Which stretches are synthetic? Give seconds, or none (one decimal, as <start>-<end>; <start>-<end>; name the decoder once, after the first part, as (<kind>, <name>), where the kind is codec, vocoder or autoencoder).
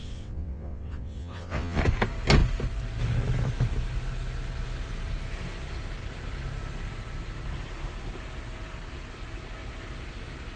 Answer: 0.0-1.8 (vocoder, WaveNeXt)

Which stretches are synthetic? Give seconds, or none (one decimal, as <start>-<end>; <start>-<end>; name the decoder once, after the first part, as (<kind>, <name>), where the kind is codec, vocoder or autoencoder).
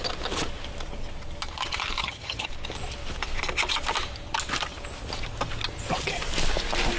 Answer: 2.0-2.5 (vocoder, HiFi-GAN)